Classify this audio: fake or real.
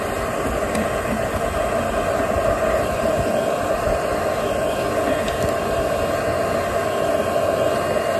real